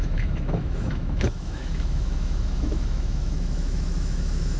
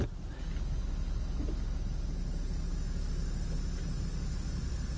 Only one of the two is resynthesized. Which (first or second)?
first